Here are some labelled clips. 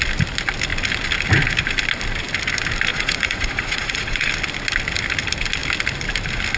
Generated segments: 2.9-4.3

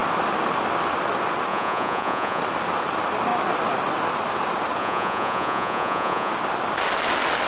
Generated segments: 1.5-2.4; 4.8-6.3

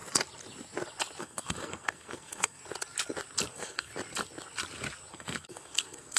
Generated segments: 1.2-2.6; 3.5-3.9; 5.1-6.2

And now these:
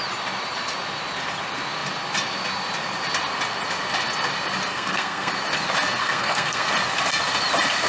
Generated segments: 4.7-5.3; 6.0-6.7

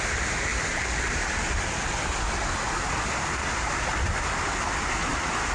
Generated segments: none